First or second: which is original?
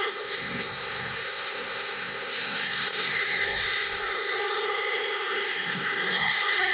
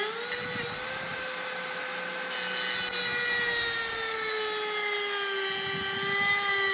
second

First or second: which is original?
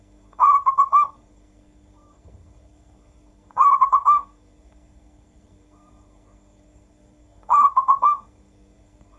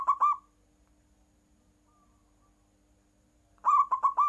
second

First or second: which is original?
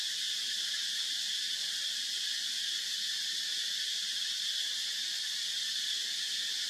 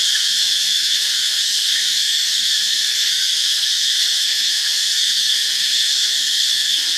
first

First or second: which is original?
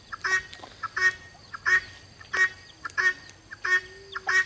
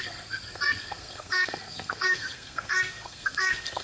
first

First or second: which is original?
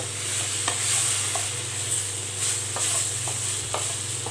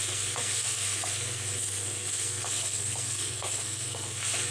first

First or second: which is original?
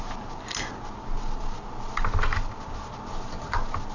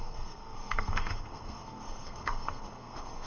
first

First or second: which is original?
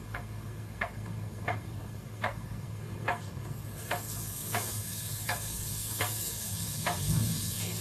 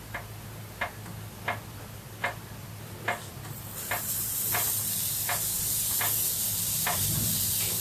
second